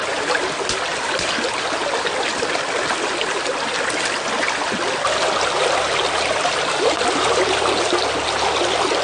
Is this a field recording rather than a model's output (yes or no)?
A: yes